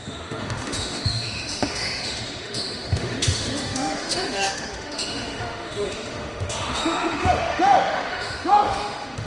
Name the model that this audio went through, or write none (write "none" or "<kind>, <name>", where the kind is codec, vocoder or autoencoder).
autoencoder, DAC-VAE